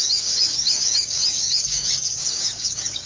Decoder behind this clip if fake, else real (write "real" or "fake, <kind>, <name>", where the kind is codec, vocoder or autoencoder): fake, codec, DAC